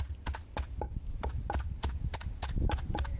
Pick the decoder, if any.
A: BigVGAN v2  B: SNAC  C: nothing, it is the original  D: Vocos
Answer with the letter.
C